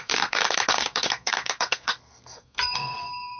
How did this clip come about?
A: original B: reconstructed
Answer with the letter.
B